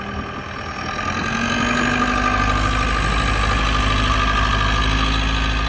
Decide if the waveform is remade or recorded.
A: recorded